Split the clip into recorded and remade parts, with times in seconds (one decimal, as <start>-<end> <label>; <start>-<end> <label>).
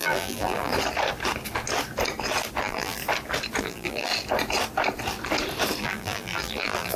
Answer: 0.0-0.7 remade; 0.7-2.6 recorded; 2.6-3.0 remade; 3.0-3.6 recorded; 3.6-4.1 remade; 4.1-5.8 recorded; 5.8-7.0 remade